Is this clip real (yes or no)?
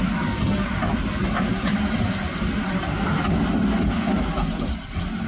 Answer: yes